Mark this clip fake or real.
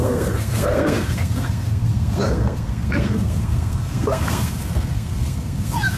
fake